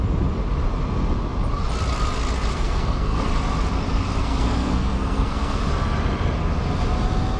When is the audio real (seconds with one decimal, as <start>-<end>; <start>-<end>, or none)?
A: 0.0-2.5; 3.3-4.2; 5.6-7.4